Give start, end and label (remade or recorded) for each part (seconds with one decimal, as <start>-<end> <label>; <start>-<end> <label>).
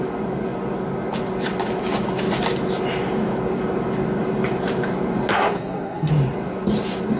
0.0-5.3 recorded; 5.3-6.1 remade; 6.1-7.2 recorded